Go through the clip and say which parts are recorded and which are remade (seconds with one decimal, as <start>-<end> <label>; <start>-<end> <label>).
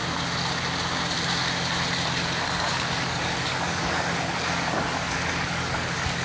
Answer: 0.0-2.4 recorded; 2.4-6.2 remade